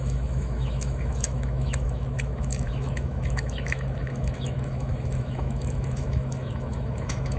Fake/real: fake